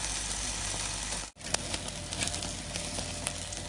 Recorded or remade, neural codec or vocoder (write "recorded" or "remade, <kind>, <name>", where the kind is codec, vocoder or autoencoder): recorded